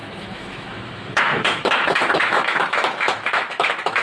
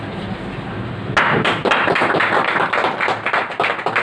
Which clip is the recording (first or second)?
second